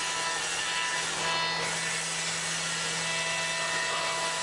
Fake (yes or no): no